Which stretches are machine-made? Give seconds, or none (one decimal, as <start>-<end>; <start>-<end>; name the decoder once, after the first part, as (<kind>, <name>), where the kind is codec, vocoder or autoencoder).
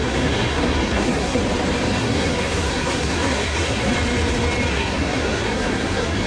0.0-1.4 (codec, SNAC); 2.0-3.9; 4.7-6.3